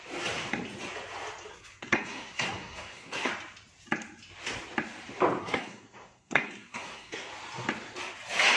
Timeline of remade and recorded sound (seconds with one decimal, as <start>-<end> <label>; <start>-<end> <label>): 0.0-1.5 recorded; 1.5-3.3 remade; 3.3-5.4 recorded; 5.4-7.3 remade; 7.3-8.6 recorded

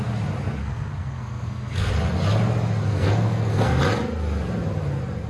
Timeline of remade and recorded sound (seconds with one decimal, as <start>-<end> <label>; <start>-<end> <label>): 0.0-0.6 recorded; 0.6-1.9 remade; 1.9-2.9 recorded; 2.9-3.8 remade; 3.8-5.3 recorded

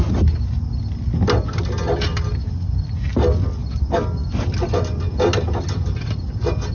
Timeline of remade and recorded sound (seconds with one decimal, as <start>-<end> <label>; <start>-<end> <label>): 0.0-6.7 recorded

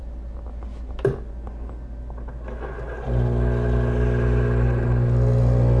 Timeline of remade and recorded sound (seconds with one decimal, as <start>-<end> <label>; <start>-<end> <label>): 0.0-5.8 recorded

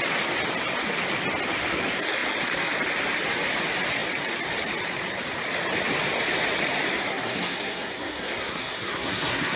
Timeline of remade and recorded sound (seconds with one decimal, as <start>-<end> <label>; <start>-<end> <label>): 0.0-7.0 recorded; 7.0-9.6 remade

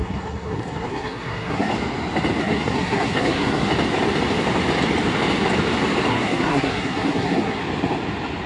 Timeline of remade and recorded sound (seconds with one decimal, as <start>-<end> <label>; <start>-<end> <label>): 0.0-1.7 remade; 1.7-2.4 recorded; 2.4-3.7 remade; 3.7-6.1 recorded; 6.1-7.6 remade; 7.6-8.5 recorded